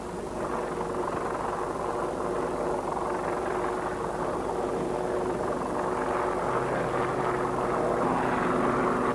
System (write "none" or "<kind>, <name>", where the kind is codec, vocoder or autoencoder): none